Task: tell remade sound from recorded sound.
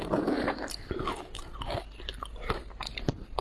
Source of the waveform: recorded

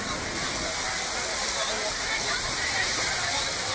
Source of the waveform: recorded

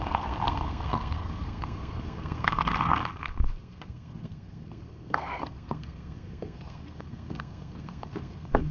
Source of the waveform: remade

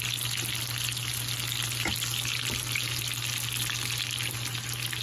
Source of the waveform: recorded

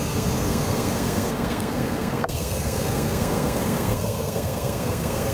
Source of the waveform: remade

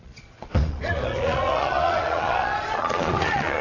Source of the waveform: remade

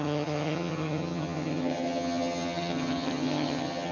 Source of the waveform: remade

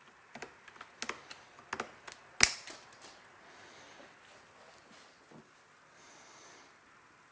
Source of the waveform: recorded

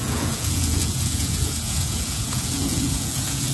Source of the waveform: remade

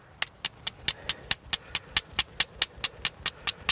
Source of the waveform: recorded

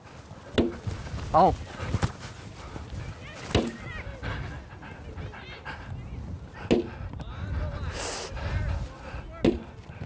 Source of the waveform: recorded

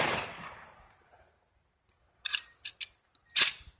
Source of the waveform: recorded